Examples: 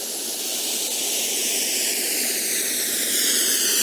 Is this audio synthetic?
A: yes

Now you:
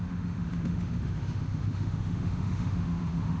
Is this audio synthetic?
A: yes